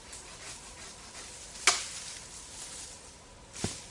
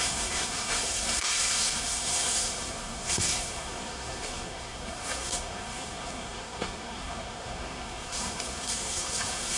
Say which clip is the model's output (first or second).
second